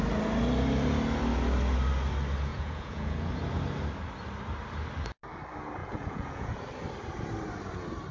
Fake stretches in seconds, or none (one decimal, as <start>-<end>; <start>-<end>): 2.5-3.3; 5.8-6.5